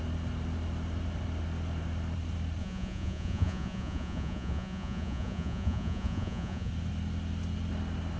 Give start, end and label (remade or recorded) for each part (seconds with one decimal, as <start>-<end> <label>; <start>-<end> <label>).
0.0-2.6 recorded; 2.6-6.7 remade; 6.7-8.2 recorded